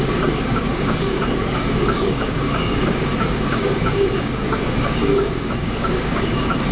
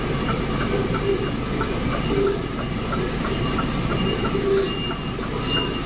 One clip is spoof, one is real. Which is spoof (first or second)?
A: first